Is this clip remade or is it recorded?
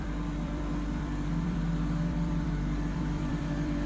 remade